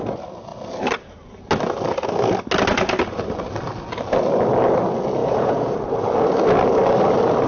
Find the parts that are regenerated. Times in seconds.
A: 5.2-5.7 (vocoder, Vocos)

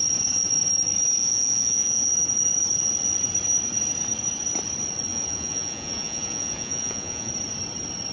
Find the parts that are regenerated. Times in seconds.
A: 1.2-2.1 (vocoder, Vocos); 5.1-7.3

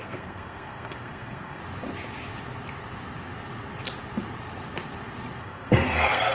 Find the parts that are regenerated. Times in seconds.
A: 0.0-1.6 (codec, SNAC); 5.4-6.3